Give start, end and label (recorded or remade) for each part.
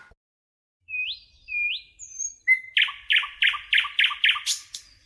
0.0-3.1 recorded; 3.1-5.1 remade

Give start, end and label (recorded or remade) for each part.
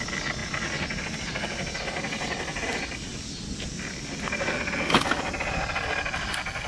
0.0-6.7 recorded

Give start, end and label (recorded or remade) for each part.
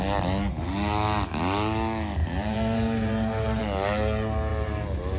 0.0-2.2 recorded; 2.2-3.6 remade; 3.6-4.5 recorded; 4.5-5.2 remade